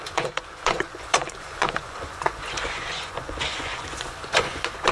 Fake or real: fake